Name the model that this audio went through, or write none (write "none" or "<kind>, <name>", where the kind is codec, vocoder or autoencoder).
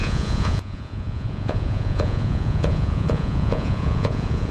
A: vocoder, Vocos